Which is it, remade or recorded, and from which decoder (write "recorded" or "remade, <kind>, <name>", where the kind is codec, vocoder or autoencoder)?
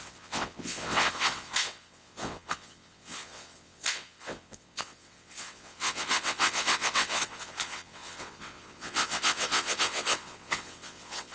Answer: remade, vocoder, WaveNeXt